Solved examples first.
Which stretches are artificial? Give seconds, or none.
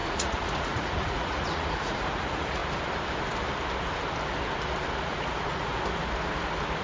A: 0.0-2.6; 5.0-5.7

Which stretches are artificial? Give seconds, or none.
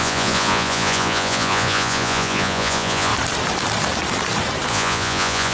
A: 0.0-3.1; 4.7-5.5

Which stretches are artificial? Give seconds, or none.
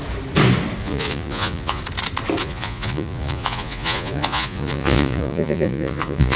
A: 0.8-1.8; 2.4-6.4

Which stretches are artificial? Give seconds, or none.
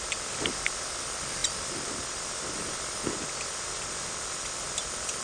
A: none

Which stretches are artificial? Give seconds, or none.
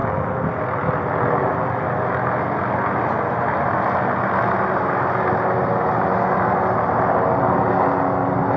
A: none